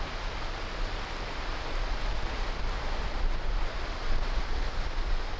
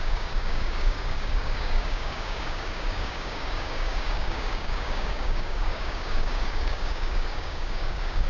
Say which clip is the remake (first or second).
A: second